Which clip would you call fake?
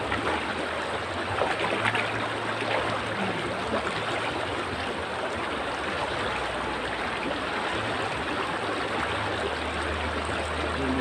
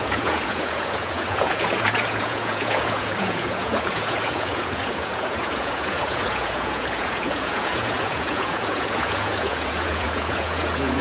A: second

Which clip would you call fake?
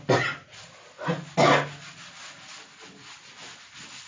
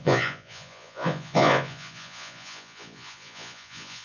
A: second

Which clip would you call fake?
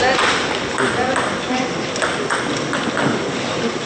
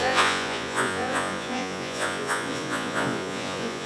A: second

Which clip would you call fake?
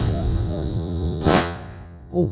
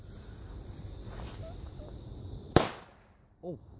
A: first